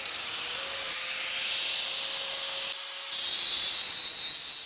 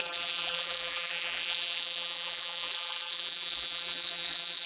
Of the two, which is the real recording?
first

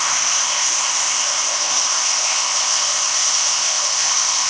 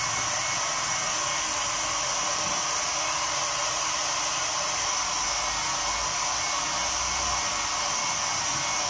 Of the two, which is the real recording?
second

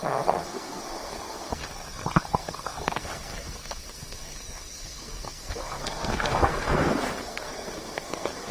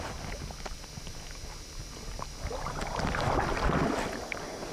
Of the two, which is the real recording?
second